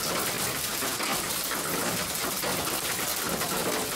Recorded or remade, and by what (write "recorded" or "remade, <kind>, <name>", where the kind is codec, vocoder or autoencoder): recorded